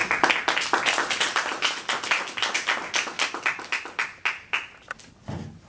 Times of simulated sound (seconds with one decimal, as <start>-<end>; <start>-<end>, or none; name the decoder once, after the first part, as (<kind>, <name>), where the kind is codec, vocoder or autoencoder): none